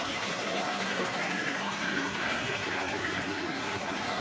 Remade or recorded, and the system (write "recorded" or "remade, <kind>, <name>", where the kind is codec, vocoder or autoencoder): remade, codec, SNAC